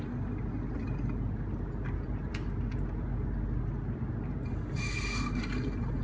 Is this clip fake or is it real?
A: real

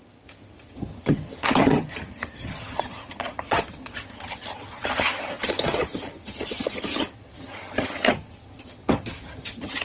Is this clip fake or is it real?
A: fake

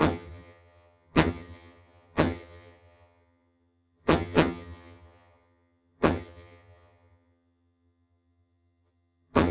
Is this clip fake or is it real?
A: fake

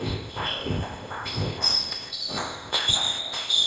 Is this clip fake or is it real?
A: fake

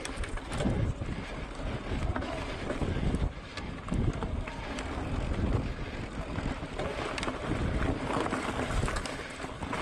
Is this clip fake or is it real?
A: real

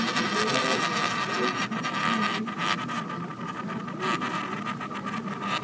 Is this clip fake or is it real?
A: real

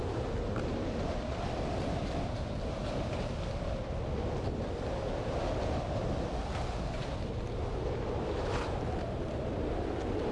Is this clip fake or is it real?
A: real